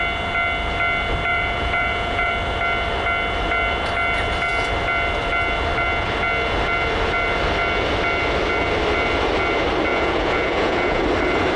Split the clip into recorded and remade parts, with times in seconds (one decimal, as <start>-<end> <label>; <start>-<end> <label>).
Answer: 0.0-1.3 recorded; 1.3-2.3 remade; 2.3-9.9 recorded; 9.9-11.0 remade; 11.0-11.6 recorded